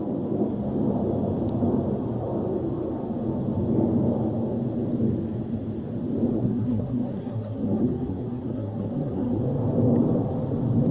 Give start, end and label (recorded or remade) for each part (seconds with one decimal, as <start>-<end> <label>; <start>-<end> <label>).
0.0-6.3 recorded; 6.3-9.4 remade; 9.4-10.9 recorded